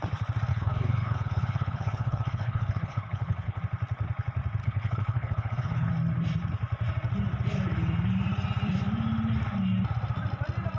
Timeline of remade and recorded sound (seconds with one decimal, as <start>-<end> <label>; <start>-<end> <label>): 0.0-0.5 recorded; 0.5-3.6 remade; 3.6-4.6 recorded; 4.6-5.9 remade; 5.9-10.8 recorded